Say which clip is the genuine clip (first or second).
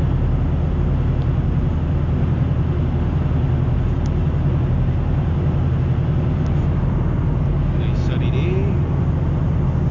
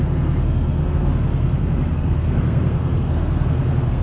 first